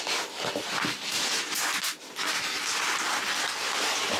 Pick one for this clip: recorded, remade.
recorded